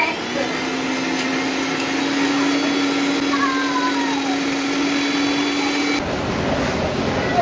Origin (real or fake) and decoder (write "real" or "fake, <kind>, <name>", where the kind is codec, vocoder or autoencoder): real